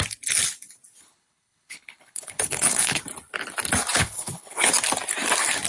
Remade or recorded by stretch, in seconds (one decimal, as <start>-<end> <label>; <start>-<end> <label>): 0.0-1.0 recorded; 1.0-3.0 remade; 3.0-4.0 recorded; 4.0-4.7 remade; 4.7-5.7 recorded